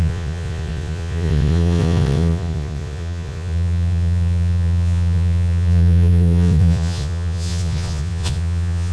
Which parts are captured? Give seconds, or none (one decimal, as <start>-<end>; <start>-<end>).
none